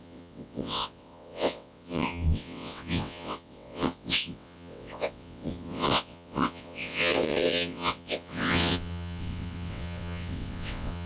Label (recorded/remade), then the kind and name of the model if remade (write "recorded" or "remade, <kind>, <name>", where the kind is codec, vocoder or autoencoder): remade, vocoder, WaveNeXt